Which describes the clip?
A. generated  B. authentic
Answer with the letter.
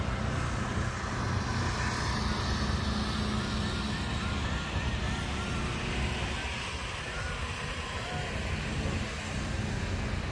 B